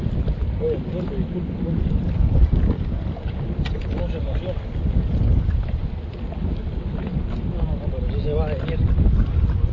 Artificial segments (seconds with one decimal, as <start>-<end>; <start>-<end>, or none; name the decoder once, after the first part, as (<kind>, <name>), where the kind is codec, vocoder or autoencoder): none